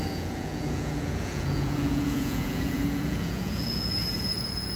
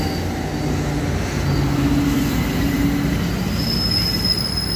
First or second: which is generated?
first